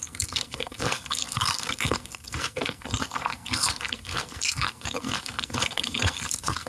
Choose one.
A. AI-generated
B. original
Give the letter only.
A